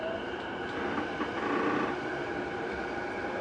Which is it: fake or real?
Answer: fake